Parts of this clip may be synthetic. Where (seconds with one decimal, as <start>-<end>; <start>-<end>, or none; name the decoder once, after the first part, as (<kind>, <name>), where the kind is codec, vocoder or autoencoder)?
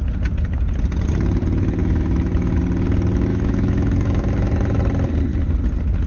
1.8-2.6 (autoencoder, DAC-VAE); 3.3-4.8